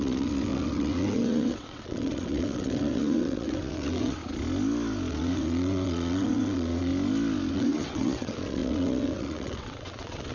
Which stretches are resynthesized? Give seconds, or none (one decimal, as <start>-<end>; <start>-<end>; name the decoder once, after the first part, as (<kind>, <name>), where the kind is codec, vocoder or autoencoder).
0.0-4.2 (vocoder, WaveNeXt); 5.1-6.9; 7.5-10.3